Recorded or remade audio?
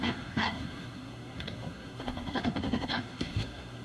remade